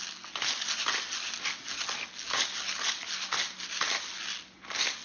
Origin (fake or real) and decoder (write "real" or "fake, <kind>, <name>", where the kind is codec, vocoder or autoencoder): real